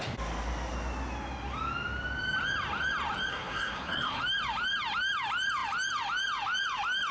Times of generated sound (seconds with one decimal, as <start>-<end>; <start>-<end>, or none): 3.3-4.2